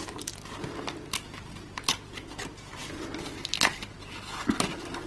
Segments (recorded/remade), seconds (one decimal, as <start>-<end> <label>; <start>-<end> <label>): 0.0-5.1 recorded

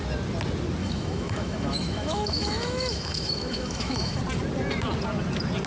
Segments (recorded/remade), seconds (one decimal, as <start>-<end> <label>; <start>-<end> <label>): 0.0-0.8 recorded; 0.8-4.2 remade; 4.2-5.7 recorded

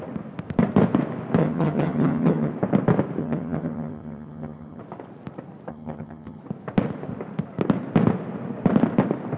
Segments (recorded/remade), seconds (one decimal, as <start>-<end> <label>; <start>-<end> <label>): 0.0-1.4 recorded; 1.4-2.5 remade; 2.5-3.2 recorded; 3.2-4.8 remade; 4.8-5.7 recorded; 5.7-6.4 remade; 6.4-9.4 recorded

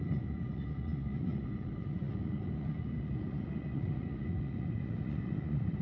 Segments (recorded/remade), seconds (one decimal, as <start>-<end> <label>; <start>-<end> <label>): 0.0-5.8 remade